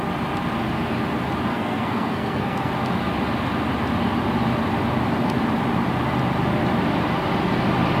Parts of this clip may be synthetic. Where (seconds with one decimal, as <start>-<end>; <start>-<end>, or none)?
1.5-2.7